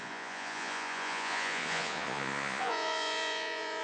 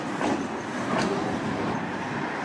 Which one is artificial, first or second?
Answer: first